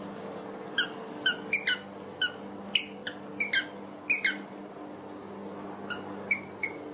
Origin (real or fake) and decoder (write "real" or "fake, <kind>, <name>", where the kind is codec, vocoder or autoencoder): real